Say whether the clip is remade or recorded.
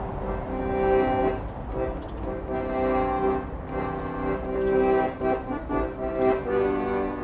recorded